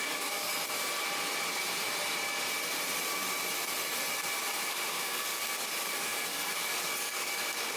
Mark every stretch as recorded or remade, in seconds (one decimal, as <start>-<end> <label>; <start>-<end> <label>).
0.0-0.5 remade; 0.5-4.7 recorded; 4.7-7.8 remade